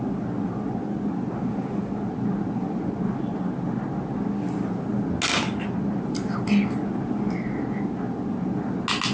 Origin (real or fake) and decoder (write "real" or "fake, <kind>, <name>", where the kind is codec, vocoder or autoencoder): real